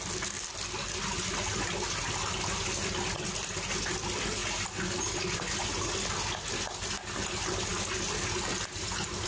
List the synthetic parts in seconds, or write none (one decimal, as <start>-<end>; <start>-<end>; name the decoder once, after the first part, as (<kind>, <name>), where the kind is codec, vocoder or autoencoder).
none